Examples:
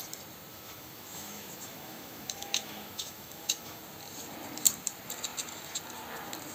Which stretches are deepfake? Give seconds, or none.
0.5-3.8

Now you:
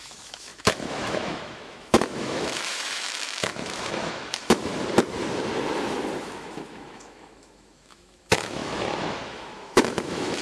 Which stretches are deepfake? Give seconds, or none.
0.0-4.7; 6.2-10.4